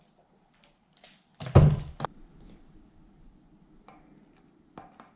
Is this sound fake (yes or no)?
no